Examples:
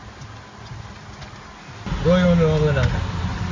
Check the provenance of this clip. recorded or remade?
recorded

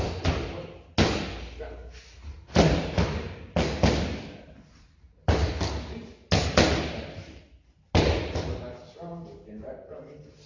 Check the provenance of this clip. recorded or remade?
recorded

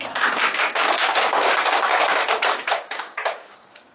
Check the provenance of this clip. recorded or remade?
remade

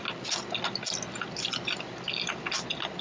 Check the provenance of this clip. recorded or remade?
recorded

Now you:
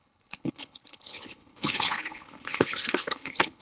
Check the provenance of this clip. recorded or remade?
remade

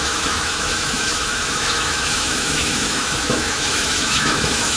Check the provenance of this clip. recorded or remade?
remade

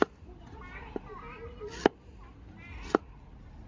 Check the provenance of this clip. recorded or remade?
recorded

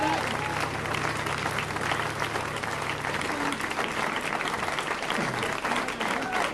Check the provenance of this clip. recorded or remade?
recorded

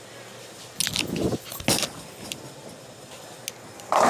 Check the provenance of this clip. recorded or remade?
recorded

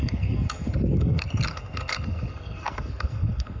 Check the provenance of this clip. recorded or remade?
remade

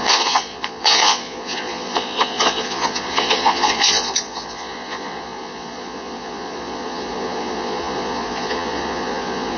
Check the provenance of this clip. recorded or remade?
remade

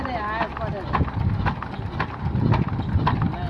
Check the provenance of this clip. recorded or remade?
recorded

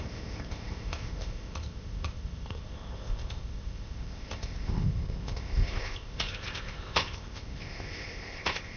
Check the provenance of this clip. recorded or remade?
remade